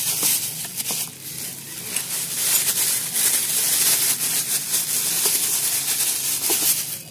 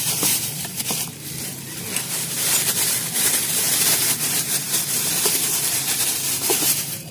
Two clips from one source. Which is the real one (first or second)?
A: first